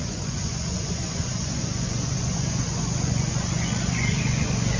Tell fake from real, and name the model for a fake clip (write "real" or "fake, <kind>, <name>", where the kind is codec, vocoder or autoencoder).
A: fake, vocoder, Vocos